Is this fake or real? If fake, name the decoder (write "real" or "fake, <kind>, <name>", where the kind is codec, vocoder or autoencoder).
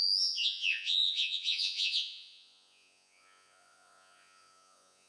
fake, vocoder, Vocos